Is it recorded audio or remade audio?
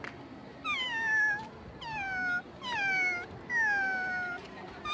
recorded